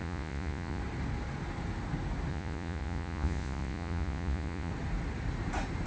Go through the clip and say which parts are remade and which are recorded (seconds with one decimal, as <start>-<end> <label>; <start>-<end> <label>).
0.0-0.8 remade; 0.8-2.3 recorded; 2.3-4.7 remade; 4.7-5.9 recorded